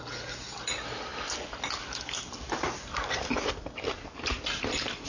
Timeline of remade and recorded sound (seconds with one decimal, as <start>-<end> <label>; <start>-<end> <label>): 0.0-5.1 recorded